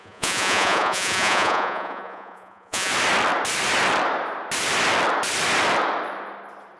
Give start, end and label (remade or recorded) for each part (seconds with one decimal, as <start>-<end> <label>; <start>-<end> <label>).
0.0-2.9 remade; 2.9-6.8 recorded